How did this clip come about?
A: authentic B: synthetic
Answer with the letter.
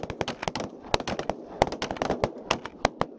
A